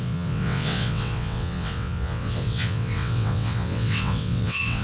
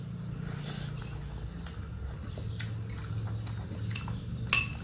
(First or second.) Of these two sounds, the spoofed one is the first